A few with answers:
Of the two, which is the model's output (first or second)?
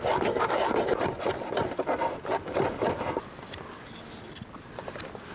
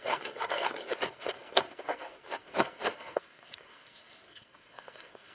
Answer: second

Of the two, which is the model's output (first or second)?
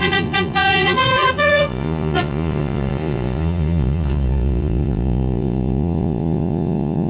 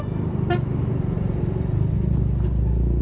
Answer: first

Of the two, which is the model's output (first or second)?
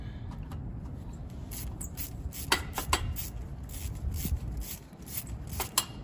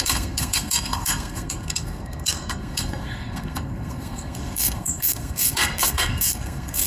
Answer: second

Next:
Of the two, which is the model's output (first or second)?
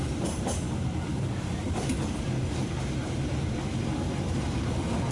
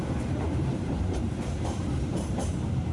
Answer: second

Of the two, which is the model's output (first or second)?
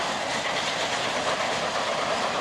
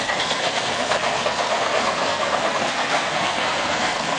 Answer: second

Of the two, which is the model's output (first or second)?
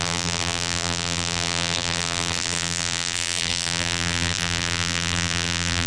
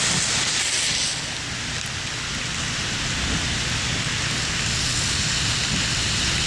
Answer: first